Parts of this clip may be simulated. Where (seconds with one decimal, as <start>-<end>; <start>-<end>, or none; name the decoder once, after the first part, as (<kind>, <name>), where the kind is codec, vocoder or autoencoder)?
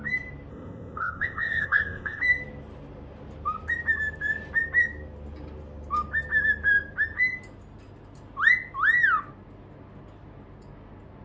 0.5-2.2 (codec, ZipCodec)